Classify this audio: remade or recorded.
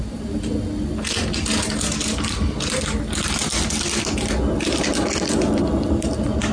recorded